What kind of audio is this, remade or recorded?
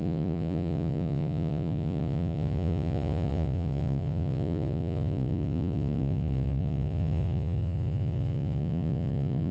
remade